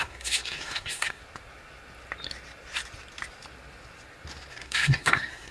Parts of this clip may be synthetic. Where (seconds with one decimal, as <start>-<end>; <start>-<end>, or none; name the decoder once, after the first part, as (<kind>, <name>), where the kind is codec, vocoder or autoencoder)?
0.0-1.2 (codec, SNAC); 4.5-5.5